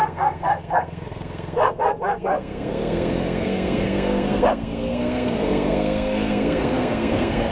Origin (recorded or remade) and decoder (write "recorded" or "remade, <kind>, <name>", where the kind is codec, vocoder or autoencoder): remade, codec, SNAC